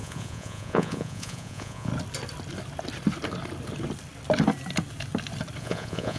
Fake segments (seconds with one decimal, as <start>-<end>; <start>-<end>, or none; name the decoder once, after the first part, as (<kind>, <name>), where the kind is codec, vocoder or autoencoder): 0.0-1.9 (vocoder, Vocos); 5.6-6.2